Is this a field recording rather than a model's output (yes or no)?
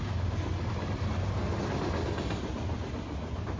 yes